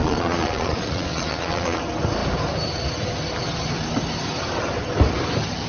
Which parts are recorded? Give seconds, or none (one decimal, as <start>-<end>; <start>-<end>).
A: 1.8-5.7